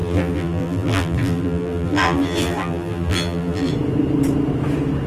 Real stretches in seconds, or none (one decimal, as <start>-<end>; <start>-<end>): 3.7-5.1

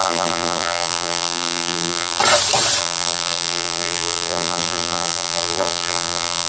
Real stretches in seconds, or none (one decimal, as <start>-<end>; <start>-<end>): 2.2-2.8